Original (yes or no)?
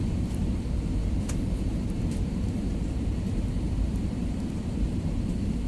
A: no